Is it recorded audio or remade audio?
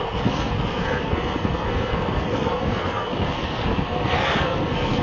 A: remade